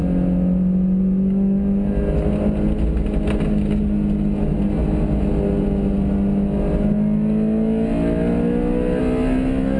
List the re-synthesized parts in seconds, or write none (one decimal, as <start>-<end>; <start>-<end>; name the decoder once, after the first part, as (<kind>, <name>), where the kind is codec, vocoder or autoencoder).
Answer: none